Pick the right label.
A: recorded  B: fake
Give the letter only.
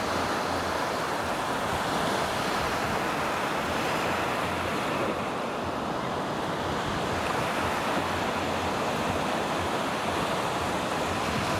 A